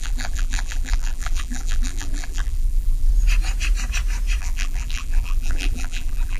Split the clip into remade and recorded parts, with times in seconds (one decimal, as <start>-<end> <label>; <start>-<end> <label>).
0.0-3.1 remade; 3.1-4.4 recorded; 4.4-6.4 remade